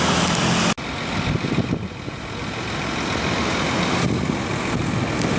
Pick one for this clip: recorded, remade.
recorded